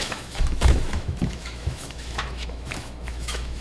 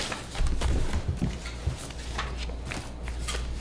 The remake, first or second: first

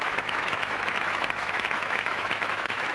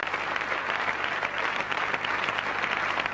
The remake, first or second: first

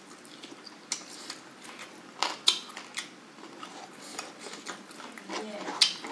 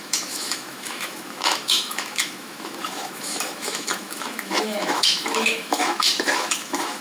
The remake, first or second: second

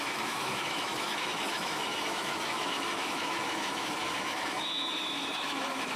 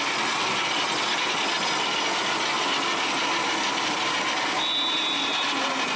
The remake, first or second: first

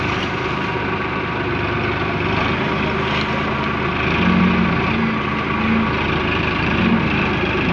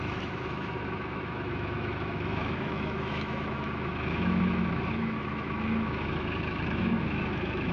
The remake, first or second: second